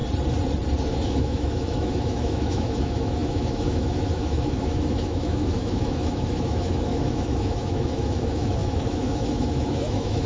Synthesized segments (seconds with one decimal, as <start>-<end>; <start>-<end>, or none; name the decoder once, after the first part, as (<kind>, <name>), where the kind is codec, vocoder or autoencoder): 0.9-10.3 (autoencoder, DAC-VAE)